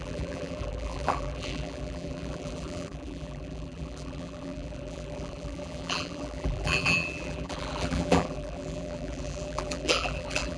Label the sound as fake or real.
fake